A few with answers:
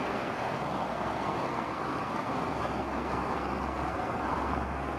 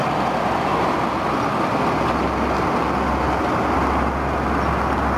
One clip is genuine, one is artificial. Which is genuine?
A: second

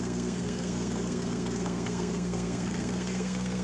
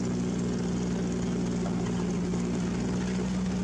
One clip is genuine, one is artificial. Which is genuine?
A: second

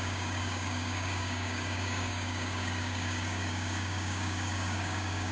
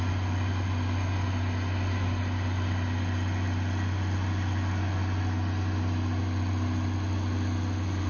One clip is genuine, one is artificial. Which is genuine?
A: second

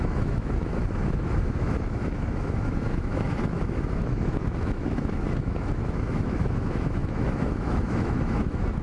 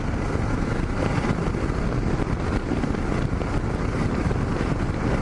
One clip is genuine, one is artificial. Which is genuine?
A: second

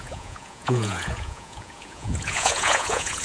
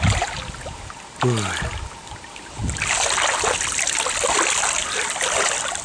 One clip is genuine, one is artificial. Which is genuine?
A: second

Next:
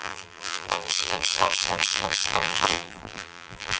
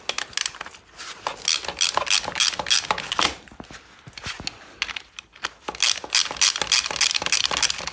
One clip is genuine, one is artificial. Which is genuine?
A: second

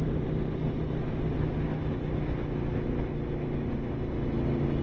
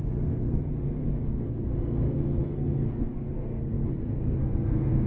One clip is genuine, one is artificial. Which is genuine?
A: first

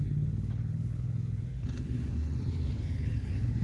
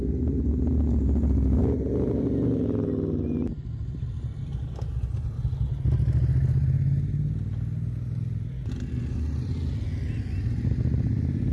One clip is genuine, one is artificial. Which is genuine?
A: second